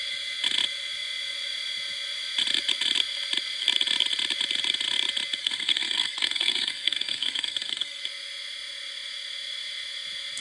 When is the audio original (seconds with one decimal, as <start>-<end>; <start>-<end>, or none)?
0.0-5.4; 8.0-10.4